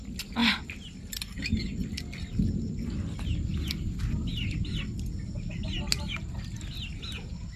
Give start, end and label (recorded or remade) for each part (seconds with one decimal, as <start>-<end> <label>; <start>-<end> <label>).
0.0-7.6 recorded